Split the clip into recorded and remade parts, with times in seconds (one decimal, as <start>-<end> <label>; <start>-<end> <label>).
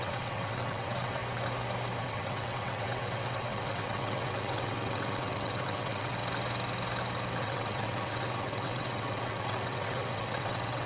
0.0-1.2 remade; 1.2-2.0 recorded; 2.0-6.2 remade; 6.2-7.4 recorded; 7.4-10.9 remade